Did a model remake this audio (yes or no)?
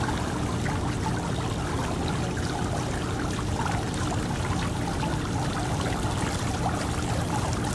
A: no